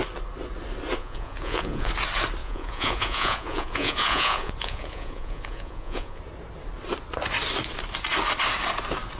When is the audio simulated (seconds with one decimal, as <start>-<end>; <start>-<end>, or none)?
1.0-1.9; 2.4-6.2